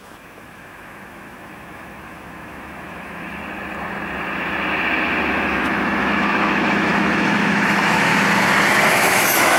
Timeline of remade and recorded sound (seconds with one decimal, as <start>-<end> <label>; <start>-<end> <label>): 0.0-3.4 remade; 3.4-5.3 recorded; 5.3-8.1 remade; 8.1-8.9 recorded; 8.9-9.6 remade